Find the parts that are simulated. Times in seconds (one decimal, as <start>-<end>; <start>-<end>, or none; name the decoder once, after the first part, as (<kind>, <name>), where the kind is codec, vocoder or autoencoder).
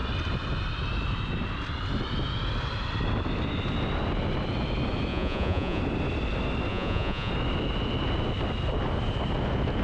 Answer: 5.1-5.8 (vocoder, Vocos); 6.7-7.3